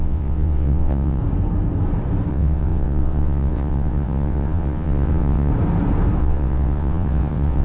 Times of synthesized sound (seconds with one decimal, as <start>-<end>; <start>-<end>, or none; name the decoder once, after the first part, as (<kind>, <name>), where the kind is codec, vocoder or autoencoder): 0.0-1.2 (vocoder, WaveNeXt); 2.3-5.5; 6.2-7.6